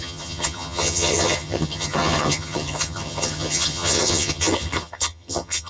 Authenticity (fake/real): fake